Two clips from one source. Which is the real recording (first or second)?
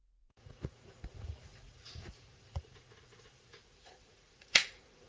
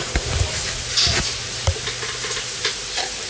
second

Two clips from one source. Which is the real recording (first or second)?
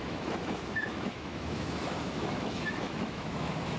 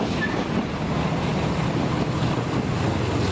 second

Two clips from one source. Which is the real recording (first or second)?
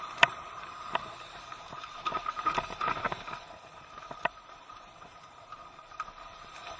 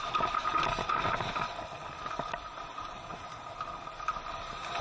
second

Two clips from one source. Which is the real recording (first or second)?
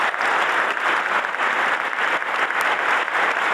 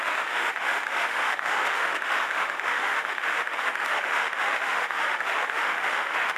first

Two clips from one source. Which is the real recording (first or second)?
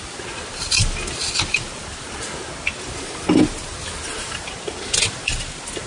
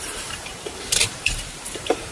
first